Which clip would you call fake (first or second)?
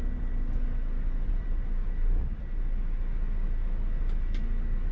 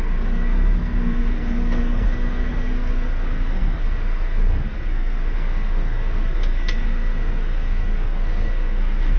second